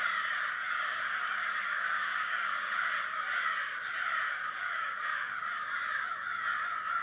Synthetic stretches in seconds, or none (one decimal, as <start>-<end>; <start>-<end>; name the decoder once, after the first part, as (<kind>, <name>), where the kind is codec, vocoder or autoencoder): 1.6-2.9 (codec, DAC); 4.3-5.4